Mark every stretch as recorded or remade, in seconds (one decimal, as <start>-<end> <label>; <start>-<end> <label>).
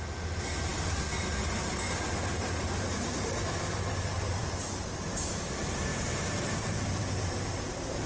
0.0-4.4 recorded; 4.4-5.3 remade; 5.3-5.9 recorded; 5.9-8.1 remade